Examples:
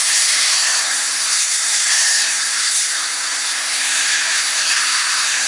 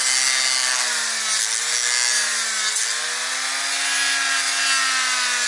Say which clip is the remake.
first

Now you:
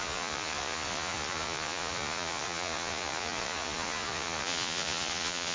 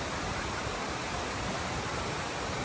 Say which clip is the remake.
first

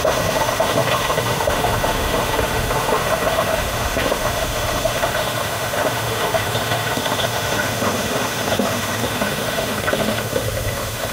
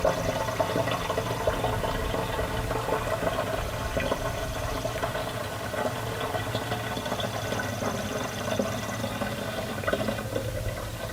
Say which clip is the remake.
first